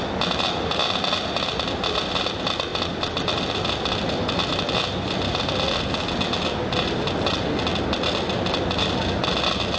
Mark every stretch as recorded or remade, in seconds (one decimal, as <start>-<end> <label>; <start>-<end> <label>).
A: 0.0-9.8 recorded